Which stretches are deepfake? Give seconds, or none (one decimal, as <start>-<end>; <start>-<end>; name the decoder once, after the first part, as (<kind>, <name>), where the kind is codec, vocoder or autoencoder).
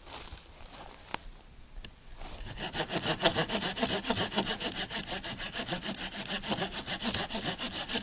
none